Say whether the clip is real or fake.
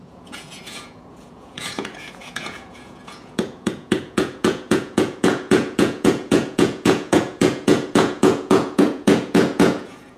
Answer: fake